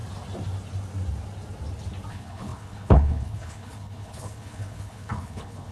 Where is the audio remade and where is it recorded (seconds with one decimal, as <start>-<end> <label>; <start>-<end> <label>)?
0.0-2.1 recorded; 2.1-5.7 remade